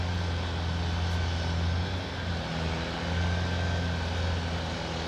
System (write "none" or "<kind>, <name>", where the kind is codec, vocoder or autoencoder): none